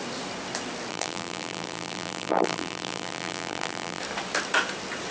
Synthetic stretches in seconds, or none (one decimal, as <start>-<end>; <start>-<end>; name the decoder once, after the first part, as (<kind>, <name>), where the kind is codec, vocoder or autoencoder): 0.9-4.0 (vocoder, BigVGAN v2)